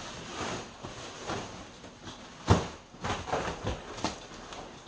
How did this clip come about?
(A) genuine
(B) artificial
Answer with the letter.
A